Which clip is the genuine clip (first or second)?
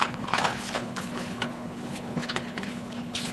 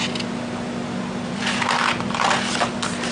second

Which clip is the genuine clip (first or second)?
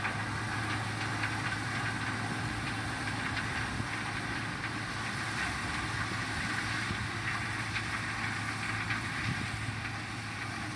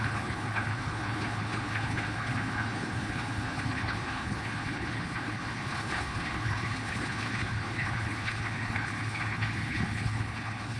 first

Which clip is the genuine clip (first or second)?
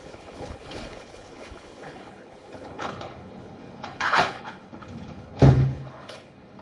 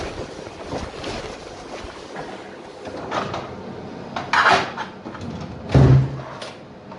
second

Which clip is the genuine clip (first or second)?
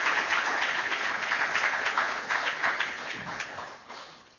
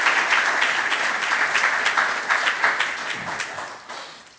second